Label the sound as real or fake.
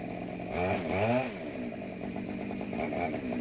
real